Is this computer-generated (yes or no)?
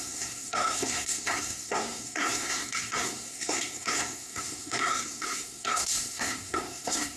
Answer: yes